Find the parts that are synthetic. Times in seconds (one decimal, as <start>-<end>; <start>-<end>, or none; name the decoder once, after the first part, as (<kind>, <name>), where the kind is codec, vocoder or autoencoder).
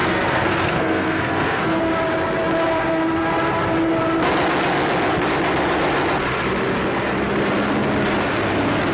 0.0-1.8 (codec, SNAC)